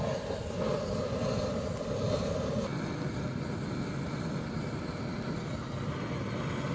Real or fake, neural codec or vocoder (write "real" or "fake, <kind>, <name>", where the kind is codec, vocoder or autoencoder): real